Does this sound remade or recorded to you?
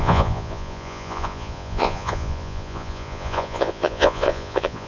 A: remade